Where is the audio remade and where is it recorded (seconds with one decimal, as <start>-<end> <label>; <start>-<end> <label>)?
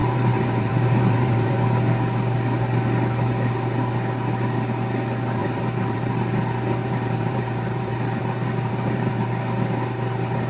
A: 0.0-1.5 remade; 1.5-5.4 recorded; 5.4-6.1 remade; 6.1-6.8 recorded; 6.8-9.3 remade; 9.3-10.5 recorded